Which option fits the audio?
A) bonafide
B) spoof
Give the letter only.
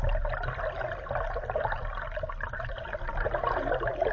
A